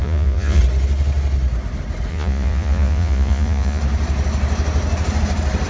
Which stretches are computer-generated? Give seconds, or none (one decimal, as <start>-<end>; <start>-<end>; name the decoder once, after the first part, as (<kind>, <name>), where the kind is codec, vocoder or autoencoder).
0.0-0.6 (vocoder, Vocos); 2.1-3.8